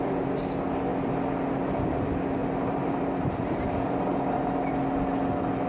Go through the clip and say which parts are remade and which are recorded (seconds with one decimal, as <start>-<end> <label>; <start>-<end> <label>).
0.0-2.4 recorded; 2.4-4.4 remade; 4.4-5.7 recorded